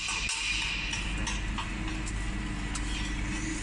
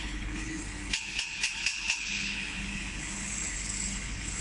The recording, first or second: first